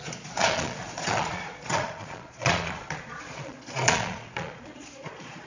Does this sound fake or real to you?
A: fake